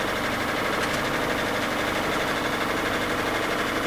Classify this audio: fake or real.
real